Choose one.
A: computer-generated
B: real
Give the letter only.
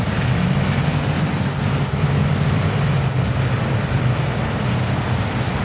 B